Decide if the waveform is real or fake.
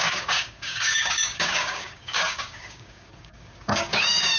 fake